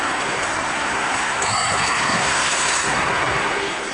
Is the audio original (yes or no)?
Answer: no